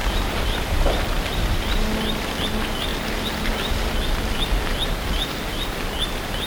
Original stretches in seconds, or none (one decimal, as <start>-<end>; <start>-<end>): 2.4-6.5